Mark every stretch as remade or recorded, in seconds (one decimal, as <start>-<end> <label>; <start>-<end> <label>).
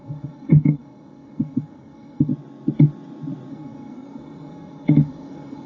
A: 0.0-2.3 remade; 2.3-3.5 recorded; 3.5-5.7 remade